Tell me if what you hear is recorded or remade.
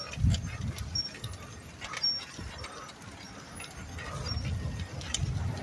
recorded